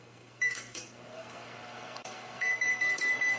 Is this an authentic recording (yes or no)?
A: no